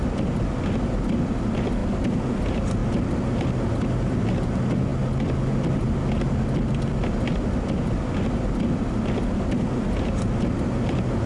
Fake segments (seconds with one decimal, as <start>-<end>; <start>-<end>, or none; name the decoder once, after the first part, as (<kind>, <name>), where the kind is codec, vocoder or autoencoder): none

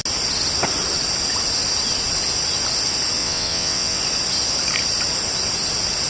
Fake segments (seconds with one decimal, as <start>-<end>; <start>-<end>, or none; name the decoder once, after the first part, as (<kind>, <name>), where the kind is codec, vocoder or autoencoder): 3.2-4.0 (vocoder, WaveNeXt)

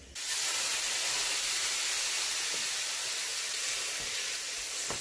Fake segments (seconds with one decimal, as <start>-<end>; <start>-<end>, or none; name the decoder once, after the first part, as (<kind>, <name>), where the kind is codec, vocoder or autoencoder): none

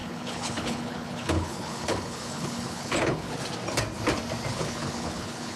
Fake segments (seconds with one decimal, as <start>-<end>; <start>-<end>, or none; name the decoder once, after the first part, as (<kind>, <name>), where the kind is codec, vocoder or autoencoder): 0.0-3.4 (codec, HILCodec); 4.5-5.6

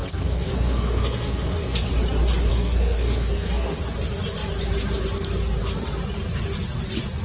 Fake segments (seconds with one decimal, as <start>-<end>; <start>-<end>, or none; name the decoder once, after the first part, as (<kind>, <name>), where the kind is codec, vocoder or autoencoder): 0.0-1.9 (codec, SNAC); 2.5-3.8

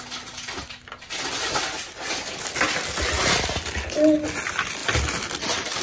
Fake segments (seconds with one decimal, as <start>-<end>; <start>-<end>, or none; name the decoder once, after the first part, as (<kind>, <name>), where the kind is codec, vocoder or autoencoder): none

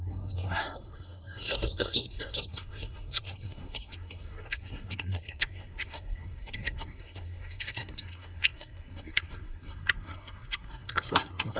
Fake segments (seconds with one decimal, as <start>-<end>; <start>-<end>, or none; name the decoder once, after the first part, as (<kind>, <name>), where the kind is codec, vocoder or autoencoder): 0.0-11.6 (codec, SNAC)

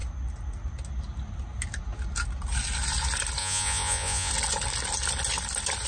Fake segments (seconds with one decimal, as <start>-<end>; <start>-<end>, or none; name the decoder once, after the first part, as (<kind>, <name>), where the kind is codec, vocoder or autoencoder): 3.4-4.3 (vocoder, Vocos)